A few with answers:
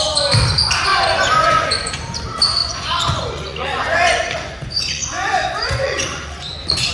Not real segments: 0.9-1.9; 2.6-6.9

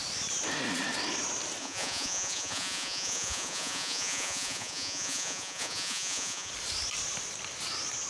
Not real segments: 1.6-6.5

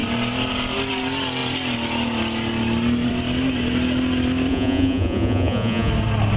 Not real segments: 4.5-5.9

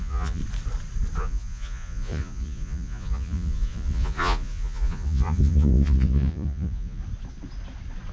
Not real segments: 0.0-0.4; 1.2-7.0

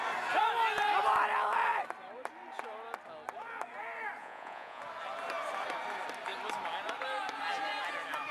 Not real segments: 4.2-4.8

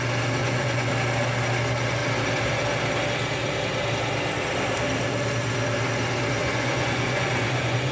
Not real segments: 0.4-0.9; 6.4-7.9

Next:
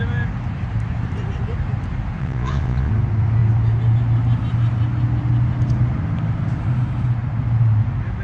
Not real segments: 2.2-2.9

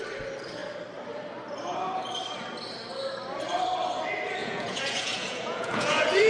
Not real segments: 4.4-6.3